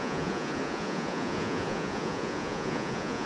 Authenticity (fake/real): fake